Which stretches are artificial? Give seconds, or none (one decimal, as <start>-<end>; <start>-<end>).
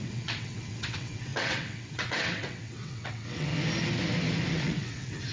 0.0-3.5; 4.5-5.3